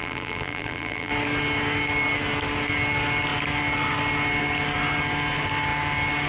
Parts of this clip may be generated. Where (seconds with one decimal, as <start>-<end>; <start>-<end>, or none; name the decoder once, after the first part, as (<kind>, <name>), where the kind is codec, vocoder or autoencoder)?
0.0-1.1 (vocoder, BigVGAN v2)